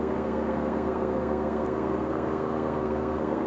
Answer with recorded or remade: remade